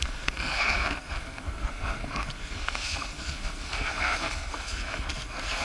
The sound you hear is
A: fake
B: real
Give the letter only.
A